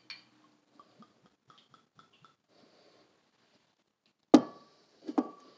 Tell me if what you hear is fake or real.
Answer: real